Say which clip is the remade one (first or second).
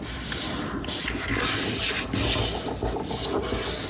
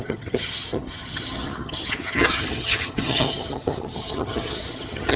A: second